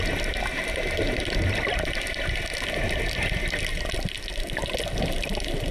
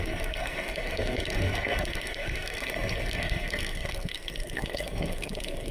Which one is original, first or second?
first